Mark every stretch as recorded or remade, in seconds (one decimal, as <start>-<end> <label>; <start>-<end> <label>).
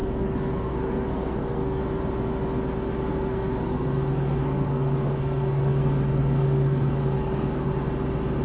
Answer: 0.0-1.8 remade; 1.8-2.9 recorded; 2.9-7.7 remade; 7.7-8.4 recorded